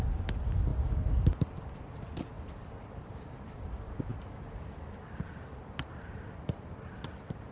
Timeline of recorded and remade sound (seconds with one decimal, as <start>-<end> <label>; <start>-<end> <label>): 0.0-7.5 recorded